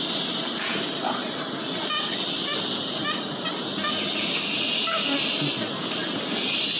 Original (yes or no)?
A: yes